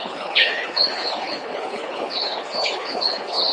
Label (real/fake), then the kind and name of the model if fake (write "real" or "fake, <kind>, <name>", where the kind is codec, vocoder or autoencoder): fake, codec, HILCodec